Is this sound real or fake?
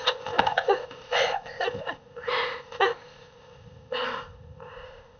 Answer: fake